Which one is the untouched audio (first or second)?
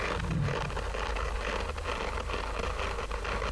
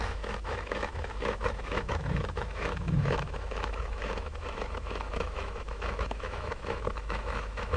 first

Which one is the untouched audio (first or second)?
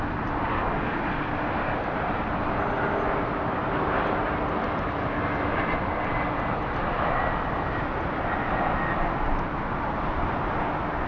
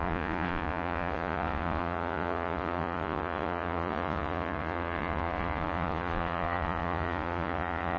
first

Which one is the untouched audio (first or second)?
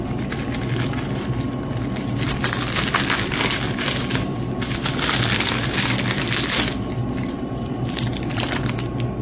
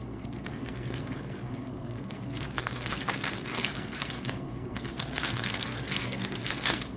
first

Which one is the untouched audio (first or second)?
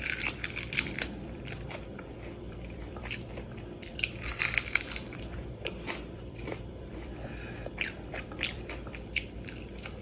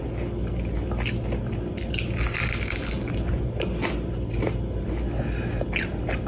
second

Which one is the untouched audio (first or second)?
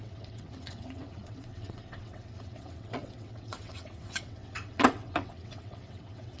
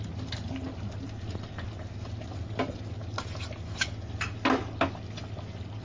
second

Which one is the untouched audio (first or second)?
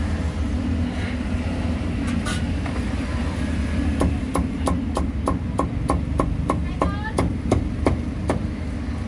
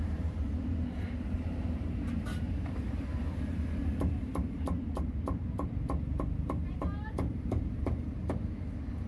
first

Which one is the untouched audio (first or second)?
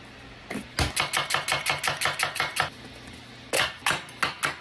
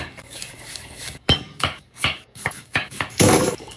first